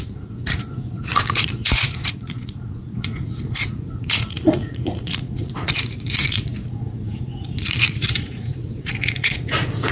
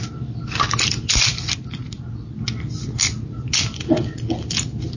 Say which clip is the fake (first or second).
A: first